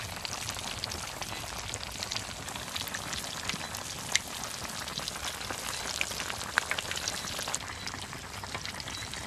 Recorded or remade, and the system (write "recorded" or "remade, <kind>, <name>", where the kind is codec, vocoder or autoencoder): recorded